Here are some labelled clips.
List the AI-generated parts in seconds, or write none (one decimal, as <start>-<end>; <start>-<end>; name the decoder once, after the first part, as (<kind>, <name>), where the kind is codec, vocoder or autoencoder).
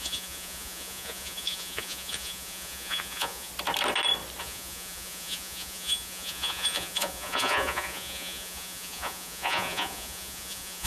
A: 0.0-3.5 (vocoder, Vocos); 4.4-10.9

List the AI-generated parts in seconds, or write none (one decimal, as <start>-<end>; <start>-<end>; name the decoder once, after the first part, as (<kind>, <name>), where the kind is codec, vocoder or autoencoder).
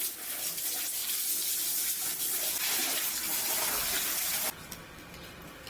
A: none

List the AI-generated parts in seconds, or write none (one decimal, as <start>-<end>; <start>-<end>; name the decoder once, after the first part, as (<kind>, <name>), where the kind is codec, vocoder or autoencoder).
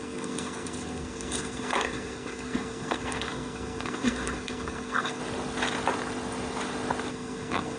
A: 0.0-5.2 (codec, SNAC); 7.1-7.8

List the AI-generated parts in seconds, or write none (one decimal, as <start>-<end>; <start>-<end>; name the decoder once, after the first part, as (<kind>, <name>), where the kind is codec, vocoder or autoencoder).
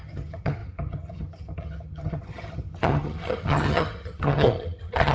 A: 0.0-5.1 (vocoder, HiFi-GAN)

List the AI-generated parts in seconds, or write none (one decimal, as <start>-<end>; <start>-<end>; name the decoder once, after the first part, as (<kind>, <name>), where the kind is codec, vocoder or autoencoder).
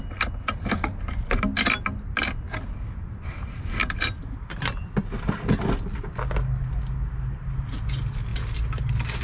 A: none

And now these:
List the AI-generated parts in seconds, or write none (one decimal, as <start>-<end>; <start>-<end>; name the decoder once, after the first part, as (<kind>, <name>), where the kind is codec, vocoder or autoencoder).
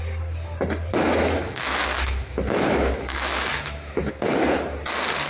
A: 0.9-4.1 (autoencoder, DAC-VAE)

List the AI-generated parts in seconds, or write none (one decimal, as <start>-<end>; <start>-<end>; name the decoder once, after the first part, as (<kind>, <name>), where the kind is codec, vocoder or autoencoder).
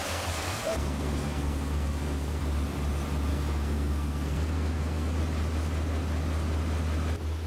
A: 0.0-2.4 (codec, SNAC); 3.3-5.2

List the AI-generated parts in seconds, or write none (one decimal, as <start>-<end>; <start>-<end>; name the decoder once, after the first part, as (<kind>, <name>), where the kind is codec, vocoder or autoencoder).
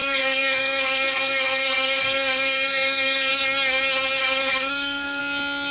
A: 0.0-3.3 (codec, SNAC); 4.2-5.2